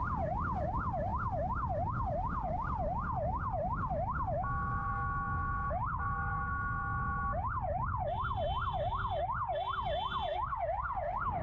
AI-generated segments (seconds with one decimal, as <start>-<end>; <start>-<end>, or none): none